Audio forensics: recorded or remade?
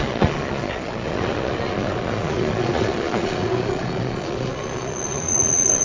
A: remade